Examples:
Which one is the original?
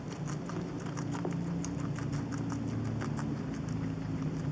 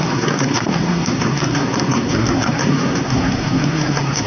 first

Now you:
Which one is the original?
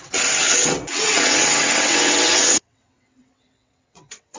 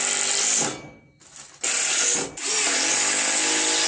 second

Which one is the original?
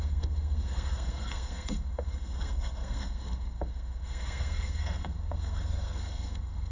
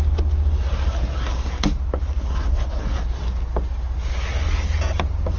second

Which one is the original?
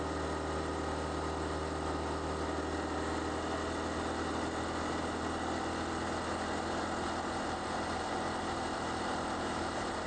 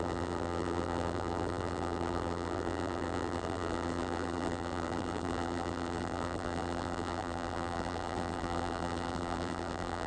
first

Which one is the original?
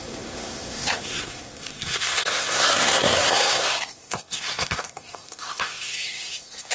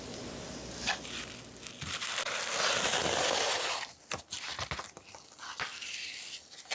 second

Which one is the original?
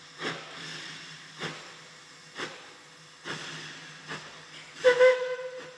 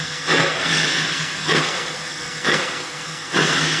first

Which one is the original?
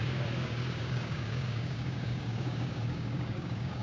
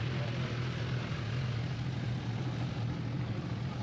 second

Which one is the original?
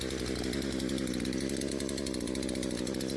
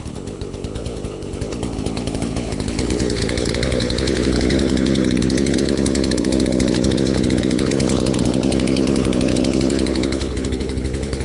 first